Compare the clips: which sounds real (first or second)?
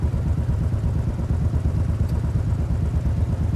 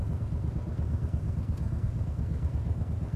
first